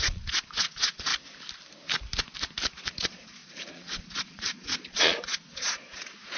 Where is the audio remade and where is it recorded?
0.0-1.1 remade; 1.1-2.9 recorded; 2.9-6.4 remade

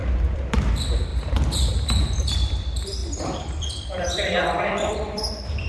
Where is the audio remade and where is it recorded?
0.0-5.7 remade

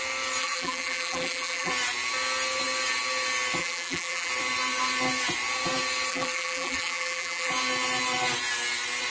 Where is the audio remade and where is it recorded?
0.0-0.4 recorded; 0.4-1.7 remade; 1.7-3.6 recorded; 3.6-4.3 remade; 4.3-6.1 recorded; 6.1-7.5 remade; 7.5-9.1 recorded

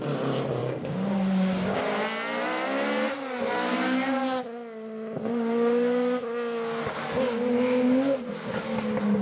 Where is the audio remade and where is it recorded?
0.0-0.6 recorded; 0.6-1.8 remade; 1.8-9.2 recorded